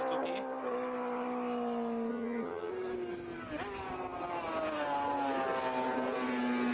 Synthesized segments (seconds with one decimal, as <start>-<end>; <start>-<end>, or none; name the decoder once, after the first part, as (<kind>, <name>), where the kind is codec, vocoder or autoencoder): 2.1-2.7 (vocoder, HiFi-GAN)